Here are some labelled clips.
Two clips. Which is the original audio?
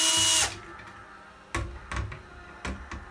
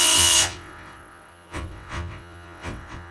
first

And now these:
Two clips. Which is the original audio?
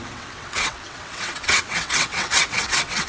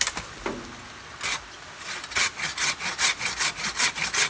second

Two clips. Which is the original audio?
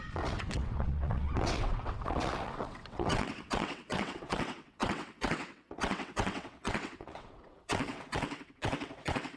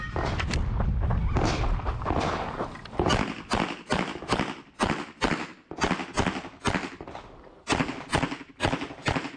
second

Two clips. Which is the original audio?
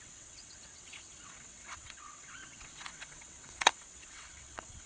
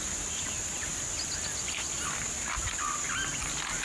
second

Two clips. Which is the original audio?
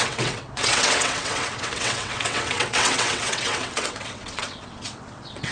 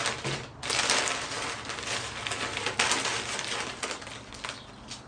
second